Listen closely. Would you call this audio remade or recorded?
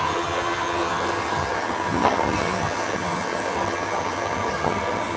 remade